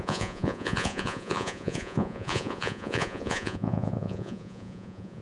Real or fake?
fake